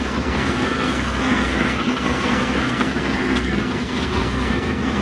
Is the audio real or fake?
fake